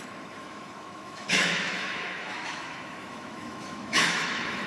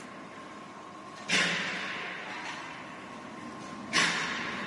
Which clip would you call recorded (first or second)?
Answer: second